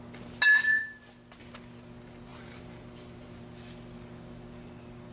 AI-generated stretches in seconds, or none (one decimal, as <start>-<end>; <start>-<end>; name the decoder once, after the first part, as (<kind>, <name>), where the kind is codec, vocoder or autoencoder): 2.3-3.4 (vocoder, BigVGAN v2)